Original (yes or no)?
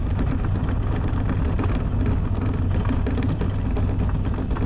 yes